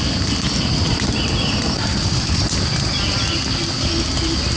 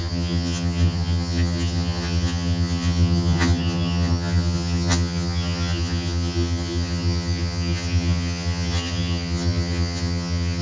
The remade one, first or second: second